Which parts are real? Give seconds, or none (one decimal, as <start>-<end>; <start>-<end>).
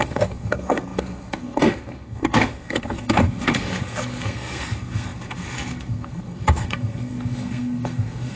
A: none